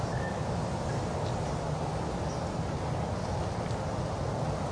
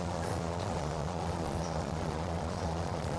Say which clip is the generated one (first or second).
second